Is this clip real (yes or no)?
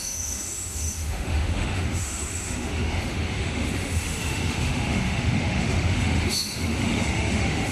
no